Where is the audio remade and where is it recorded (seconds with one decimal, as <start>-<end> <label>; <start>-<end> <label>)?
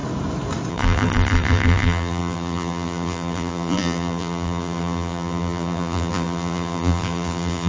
0.0-0.7 recorded; 0.7-7.7 remade